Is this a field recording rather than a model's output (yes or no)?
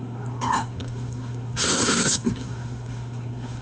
no